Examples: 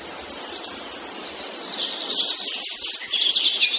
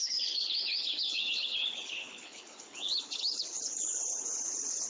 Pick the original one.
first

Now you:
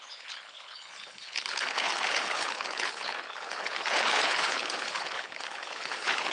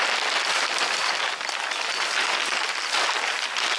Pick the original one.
second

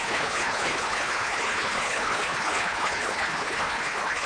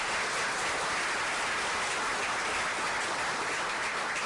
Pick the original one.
second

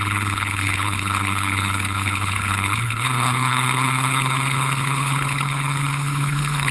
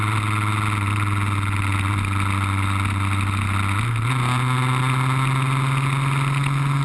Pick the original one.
second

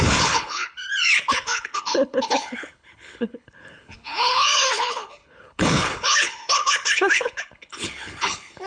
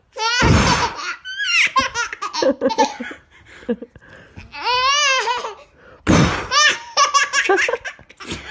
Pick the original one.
second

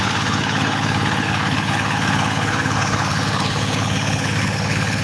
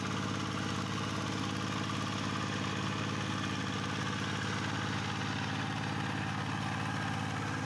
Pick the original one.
second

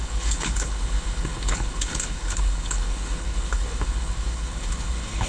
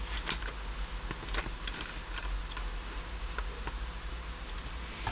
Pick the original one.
second